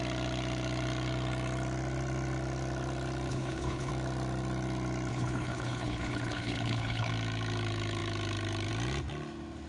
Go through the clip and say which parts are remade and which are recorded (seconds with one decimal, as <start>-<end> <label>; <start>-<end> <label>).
0.0-3.3 recorded; 3.3-3.9 remade; 3.9-5.1 recorded; 5.1-7.1 remade; 7.1-9.7 recorded